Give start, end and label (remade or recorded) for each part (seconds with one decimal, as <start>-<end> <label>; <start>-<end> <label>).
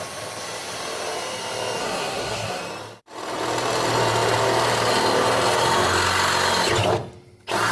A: 0.0-1.8 recorded; 1.8-2.6 remade; 2.6-7.7 recorded